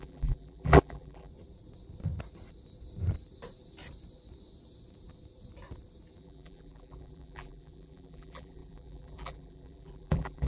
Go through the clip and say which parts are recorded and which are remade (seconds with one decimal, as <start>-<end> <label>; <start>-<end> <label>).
0.0-1.3 remade; 1.3-6.2 recorded; 6.2-10.5 remade